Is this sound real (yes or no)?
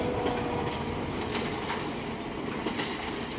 yes